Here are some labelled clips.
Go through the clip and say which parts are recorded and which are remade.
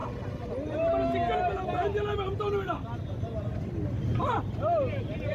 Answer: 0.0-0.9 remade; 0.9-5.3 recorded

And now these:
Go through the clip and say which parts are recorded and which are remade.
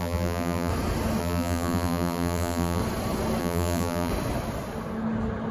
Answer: 0.0-0.7 remade; 0.7-1.2 recorded; 1.2-2.8 remade; 2.8-3.4 recorded; 3.4-4.1 remade; 4.1-5.5 recorded